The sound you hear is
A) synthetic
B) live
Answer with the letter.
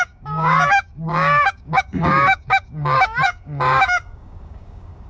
A